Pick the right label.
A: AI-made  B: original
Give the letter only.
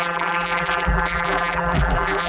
A